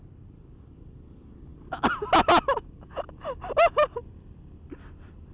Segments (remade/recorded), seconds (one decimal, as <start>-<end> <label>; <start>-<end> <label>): 0.0-5.3 recorded

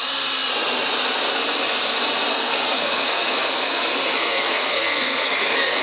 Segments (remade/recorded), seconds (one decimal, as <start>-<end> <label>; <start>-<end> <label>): 0.0-2.3 recorded; 2.3-5.8 remade

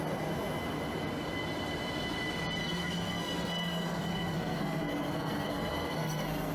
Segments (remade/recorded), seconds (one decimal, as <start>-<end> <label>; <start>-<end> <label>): 0.0-2.6 recorded; 2.6-6.5 remade

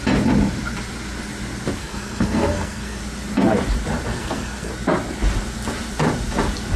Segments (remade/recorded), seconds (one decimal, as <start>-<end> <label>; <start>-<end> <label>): 0.0-1.8 recorded; 1.8-3.0 remade; 3.0-4.1 recorded; 4.1-4.7 remade; 4.7-6.8 recorded

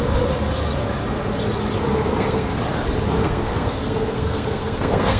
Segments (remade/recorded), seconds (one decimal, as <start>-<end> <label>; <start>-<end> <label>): 0.0-1.9 recorded; 1.9-2.6 remade; 2.6-3.2 recorded; 3.2-5.2 remade

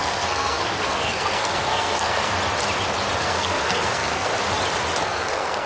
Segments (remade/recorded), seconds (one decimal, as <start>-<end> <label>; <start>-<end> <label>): 0.0-2.3 remade; 2.3-3.2 recorded; 3.2-4.3 remade; 4.3-5.0 recorded; 5.0-5.7 remade